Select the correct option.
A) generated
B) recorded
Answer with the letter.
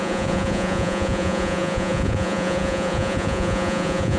A